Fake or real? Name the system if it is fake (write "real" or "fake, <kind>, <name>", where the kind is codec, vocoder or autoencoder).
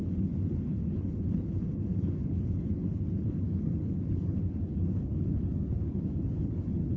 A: fake, codec, HILCodec